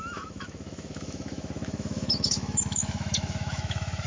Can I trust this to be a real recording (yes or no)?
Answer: no